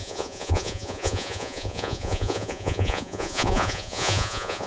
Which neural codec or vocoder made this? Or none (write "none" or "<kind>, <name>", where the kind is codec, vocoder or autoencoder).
vocoder, Vocos